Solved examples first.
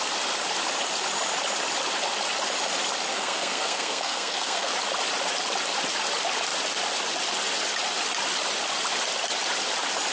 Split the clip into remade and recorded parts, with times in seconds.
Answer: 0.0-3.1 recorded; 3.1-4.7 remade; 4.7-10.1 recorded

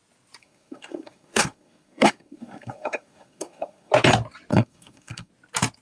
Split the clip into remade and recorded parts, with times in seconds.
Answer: 0.0-0.4 recorded; 0.4-3.9 remade; 3.9-4.5 recorded; 4.5-5.3 remade; 5.3-5.8 recorded

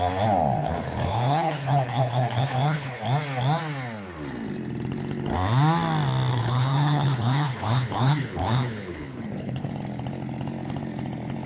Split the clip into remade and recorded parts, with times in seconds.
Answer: 0.0-0.6 recorded; 0.6-3.0 remade; 3.0-6.3 recorded; 6.3-9.7 remade; 9.7-11.5 recorded